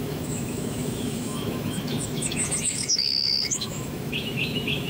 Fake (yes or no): yes